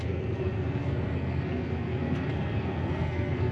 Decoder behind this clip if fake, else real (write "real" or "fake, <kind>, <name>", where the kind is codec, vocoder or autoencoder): fake, codec, SNAC